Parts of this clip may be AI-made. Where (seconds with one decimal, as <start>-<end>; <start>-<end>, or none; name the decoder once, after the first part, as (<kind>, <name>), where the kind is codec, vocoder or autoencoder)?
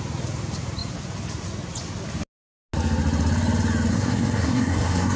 3.9-5.2 (codec, SNAC)